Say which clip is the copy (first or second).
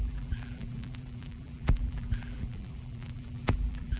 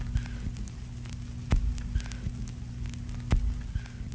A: first